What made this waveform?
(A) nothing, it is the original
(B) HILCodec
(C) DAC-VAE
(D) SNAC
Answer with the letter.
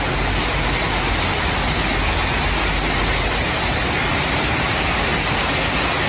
A